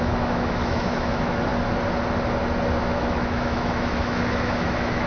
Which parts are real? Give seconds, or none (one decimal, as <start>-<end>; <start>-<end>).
1.5-2.8